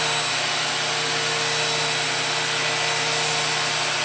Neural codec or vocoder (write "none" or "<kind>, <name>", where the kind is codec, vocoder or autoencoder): none